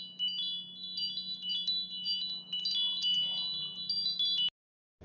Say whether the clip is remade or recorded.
recorded